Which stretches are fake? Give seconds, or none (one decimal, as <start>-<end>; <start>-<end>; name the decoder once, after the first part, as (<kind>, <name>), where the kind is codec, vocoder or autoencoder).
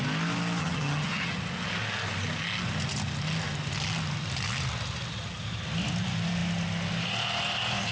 0.6-1.4 (vocoder, HiFi-GAN)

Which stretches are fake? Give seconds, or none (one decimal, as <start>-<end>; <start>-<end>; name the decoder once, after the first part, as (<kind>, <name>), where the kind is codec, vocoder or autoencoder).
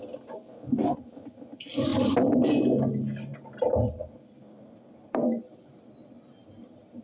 1.9-2.6 (vocoder, BigVGAN v2); 3.3-5.8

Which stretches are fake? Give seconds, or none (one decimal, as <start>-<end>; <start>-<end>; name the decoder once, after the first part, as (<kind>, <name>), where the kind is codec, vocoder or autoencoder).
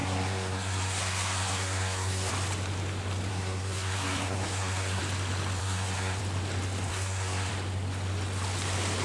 0.0-2.3 (codec, SNAC); 3.3-5.0; 5.6-6.2; 6.9-7.5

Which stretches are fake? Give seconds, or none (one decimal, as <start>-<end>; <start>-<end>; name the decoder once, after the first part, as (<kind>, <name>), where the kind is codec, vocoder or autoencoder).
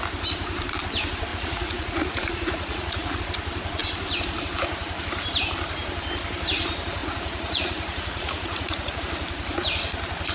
1.3-3.2 (vocoder, Vocos); 7.0-9.0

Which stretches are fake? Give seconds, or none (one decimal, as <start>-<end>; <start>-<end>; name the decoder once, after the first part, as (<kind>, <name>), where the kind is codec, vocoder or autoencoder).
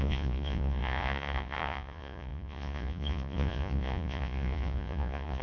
0.0-5.4 (vocoder, Vocos)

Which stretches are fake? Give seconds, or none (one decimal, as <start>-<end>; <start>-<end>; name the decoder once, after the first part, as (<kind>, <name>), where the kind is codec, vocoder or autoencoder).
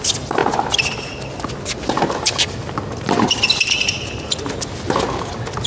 none